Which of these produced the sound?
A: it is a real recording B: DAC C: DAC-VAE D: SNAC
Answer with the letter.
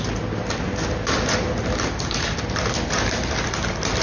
A